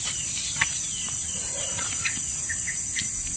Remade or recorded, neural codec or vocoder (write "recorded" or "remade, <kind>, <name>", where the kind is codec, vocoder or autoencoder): recorded